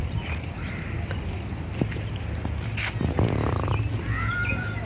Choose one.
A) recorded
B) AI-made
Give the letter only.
A